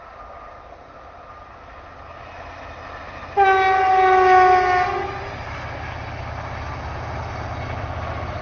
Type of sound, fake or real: real